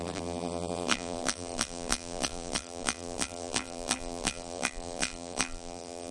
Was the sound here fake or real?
fake